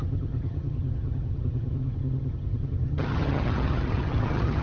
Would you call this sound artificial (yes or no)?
yes